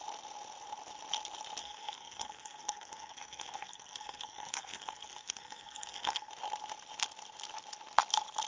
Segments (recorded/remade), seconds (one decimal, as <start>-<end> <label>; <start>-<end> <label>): 0.0-1.6 recorded; 1.6-6.3 remade; 6.3-8.5 recorded